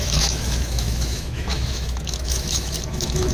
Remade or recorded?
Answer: remade